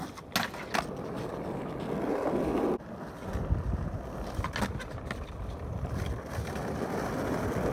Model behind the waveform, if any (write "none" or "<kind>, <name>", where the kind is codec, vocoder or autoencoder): none